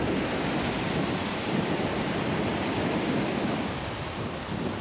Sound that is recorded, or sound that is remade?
recorded